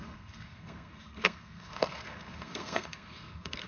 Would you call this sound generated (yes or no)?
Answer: yes